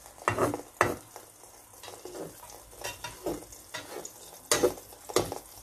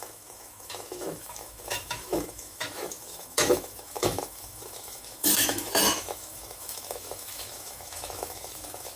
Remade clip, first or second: second